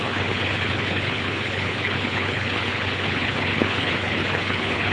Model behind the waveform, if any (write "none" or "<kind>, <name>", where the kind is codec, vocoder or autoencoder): codec, HILCodec